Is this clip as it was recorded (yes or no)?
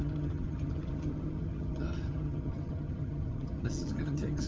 no